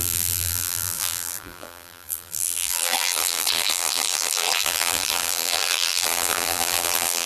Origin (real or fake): fake